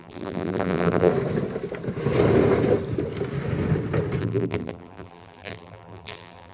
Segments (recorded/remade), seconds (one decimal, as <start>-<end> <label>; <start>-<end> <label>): 0.0-1.1 remade; 1.1-4.2 recorded; 4.2-6.5 remade

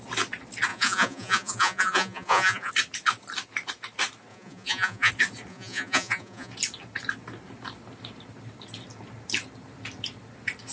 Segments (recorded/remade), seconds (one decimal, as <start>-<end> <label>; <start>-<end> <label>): 0.0-0.7 recorded; 0.7-2.7 remade; 2.7-4.3 recorded; 4.3-5.1 remade; 5.1-5.5 recorded; 5.5-6.5 remade; 6.5-10.7 recorded

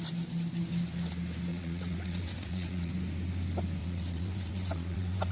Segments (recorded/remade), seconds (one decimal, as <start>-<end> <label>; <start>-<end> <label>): 0.0-1.5 recorded; 1.5-2.9 remade; 2.9-3.8 recorded; 3.8-5.3 remade

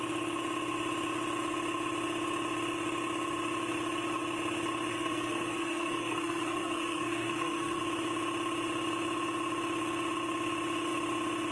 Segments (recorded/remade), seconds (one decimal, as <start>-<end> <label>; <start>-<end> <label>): 0.0-4.9 recorded; 4.9-7.8 remade; 7.8-11.5 recorded

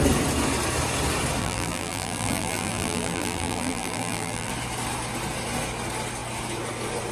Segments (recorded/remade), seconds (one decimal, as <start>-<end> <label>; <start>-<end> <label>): 0.0-1.4 recorded; 1.4-4.5 remade; 4.5-7.1 recorded